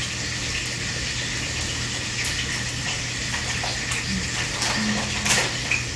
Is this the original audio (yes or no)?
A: yes